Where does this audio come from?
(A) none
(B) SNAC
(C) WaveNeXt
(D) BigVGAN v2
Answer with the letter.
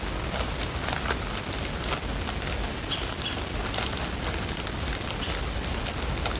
A